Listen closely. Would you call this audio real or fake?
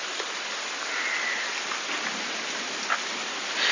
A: real